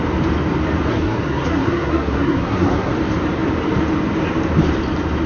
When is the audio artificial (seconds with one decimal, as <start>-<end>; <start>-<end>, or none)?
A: 0.9-2.9